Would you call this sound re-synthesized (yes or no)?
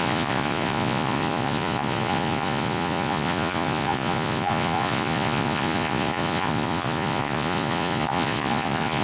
yes